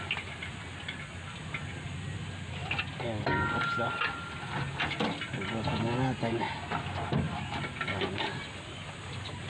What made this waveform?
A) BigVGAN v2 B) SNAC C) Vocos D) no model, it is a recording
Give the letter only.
D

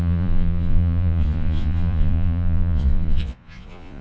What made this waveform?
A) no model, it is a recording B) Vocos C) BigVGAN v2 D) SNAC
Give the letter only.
B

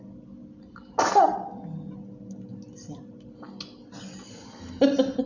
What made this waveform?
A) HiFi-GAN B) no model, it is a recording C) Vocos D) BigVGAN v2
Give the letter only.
B